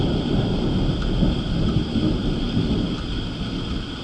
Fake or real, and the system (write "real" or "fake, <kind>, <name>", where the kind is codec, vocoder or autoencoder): real